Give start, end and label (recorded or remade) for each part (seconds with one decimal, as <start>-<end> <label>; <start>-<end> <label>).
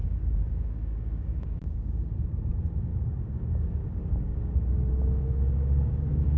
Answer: 0.0-2.0 remade; 2.0-2.9 recorded; 2.9-6.4 remade